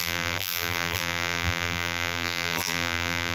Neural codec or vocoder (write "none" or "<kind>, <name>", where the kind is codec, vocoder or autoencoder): vocoder, BigVGAN v2